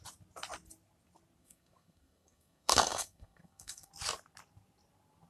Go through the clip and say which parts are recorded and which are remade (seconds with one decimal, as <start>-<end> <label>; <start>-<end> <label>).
0.0-1.4 recorded; 1.4-3.9 remade; 3.9-5.3 recorded